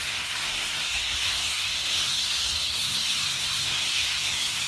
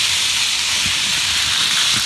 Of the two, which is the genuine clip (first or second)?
second